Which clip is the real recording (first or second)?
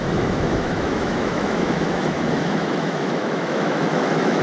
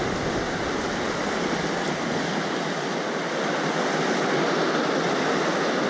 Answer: second